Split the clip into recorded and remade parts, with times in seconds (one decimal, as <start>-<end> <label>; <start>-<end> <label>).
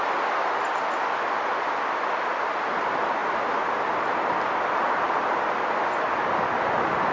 0.0-7.1 recorded